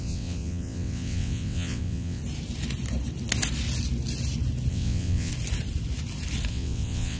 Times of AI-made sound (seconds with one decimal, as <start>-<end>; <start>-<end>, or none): 0.0-2.2; 4.7-5.3; 6.5-7.2